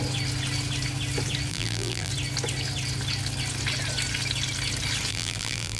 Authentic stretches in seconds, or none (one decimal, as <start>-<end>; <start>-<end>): 0.0-1.5; 2.1-5.1